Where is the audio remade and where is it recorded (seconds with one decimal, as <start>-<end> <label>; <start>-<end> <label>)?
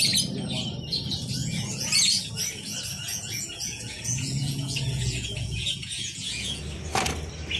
0.0-1.4 recorded; 1.4-2.3 remade; 2.3-3.1 recorded; 3.1-6.6 remade; 6.6-7.6 recorded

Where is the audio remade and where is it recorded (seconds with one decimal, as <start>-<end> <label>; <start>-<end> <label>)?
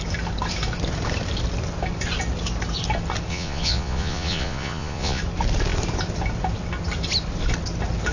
0.0-3.3 recorded; 3.3-5.2 remade; 5.2-8.1 recorded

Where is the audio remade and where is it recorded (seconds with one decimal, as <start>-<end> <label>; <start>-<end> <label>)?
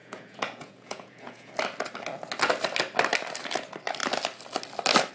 0.0-1.5 remade; 1.5-5.1 recorded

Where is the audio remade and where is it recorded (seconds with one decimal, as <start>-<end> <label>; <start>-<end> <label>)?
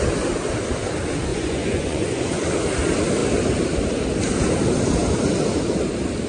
0.0-1.3 recorded; 1.3-2.5 remade; 2.5-6.3 recorded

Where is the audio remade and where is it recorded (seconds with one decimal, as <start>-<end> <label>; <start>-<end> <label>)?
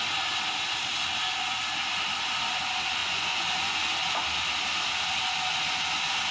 0.0-3.0 recorded; 3.0-3.8 remade; 3.8-6.3 recorded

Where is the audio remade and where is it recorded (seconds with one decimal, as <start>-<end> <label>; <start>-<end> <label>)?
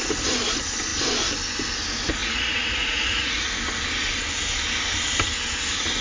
0.0-2.2 recorded; 2.2-3.5 remade; 3.5-6.0 recorded